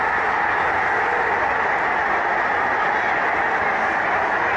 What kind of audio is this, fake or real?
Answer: real